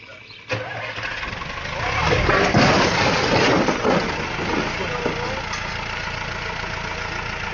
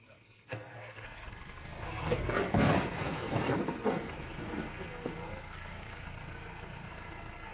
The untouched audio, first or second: first